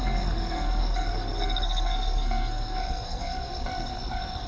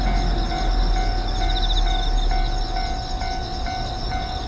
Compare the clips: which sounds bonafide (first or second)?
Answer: second